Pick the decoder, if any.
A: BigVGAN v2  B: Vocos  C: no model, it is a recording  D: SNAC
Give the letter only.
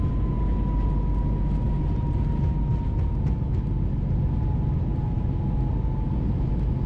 C